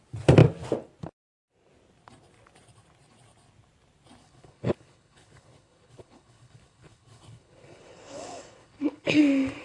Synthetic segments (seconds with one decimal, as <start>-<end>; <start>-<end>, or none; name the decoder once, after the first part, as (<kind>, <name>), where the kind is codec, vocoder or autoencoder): 4.2-9.2 (codec, HILCodec)